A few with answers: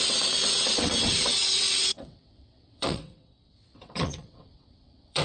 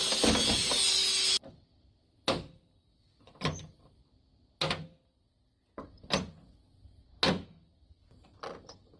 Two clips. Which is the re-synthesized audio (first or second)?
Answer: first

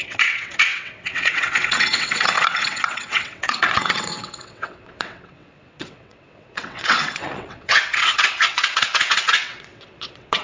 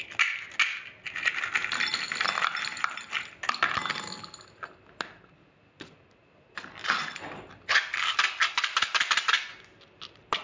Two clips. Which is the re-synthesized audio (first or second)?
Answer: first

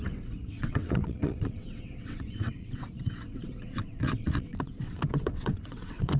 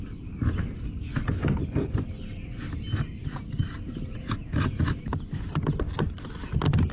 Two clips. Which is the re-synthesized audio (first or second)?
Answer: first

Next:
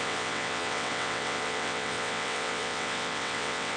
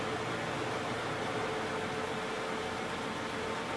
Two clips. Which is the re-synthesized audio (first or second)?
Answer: first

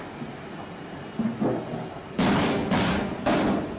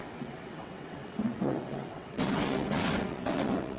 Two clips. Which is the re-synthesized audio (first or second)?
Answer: second